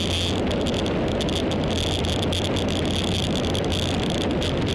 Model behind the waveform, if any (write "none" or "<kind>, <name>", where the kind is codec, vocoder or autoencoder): none